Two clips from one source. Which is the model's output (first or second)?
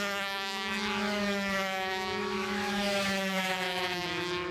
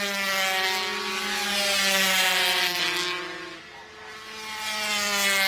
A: first